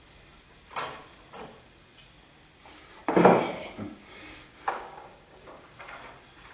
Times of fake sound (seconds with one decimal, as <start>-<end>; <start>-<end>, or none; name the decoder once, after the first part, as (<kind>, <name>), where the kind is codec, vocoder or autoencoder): 4.4-6.0 (codec, DAC)